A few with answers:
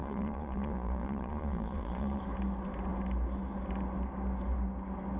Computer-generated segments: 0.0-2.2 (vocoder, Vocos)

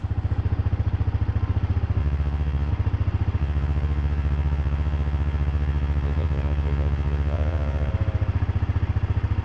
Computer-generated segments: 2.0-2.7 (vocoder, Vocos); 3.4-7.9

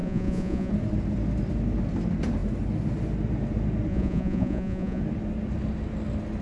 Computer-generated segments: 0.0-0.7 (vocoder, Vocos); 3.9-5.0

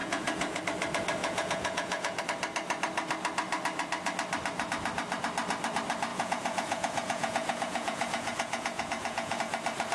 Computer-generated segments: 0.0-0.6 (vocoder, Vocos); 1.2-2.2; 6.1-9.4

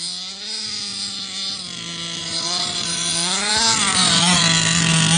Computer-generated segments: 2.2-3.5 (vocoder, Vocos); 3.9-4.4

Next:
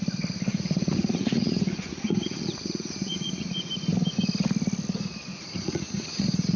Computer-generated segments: 0.5-3.7 (vocoder, Vocos); 5.3-6.6